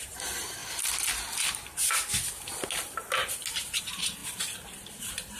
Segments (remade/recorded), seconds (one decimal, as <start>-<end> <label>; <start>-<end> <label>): 0.0-0.6 remade; 0.6-3.8 recorded; 3.8-4.2 remade; 4.2-4.9 recorded; 4.9-5.4 remade

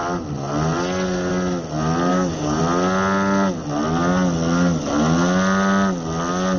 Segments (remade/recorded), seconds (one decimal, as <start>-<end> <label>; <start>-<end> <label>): 0.0-2.1 recorded; 2.1-2.6 remade; 2.6-6.6 recorded